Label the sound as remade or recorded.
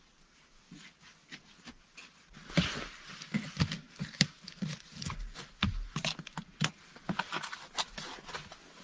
recorded